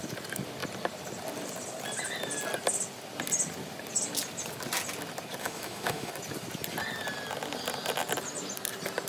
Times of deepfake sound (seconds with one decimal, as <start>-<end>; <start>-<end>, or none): 5.4-6.1